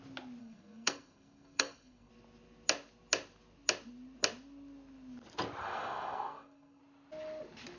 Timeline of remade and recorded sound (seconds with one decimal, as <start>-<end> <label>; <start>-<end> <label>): 0.0-0.4 recorded; 0.4-2.1 remade; 2.1-5.6 recorded; 5.6-6.8 remade; 6.8-7.8 recorded